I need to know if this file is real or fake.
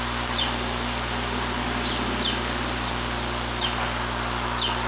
real